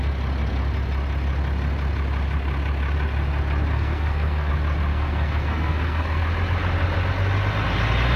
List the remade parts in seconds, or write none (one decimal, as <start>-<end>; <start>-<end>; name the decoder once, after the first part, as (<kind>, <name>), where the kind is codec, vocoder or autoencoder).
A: 3.7-4.5 (codec, SNAC); 4.9-6.2